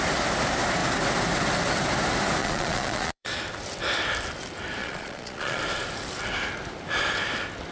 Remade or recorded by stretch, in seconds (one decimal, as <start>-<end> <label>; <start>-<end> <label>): 0.0-2.4 recorded; 2.4-3.4 remade; 3.4-4.8 recorded; 4.8-5.6 remade; 5.6-7.7 recorded